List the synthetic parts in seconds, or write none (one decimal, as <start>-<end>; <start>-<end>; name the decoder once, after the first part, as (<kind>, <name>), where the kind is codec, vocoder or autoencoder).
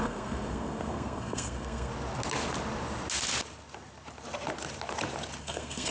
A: 0.0-1.9 (codec, SNAC); 5.4-5.9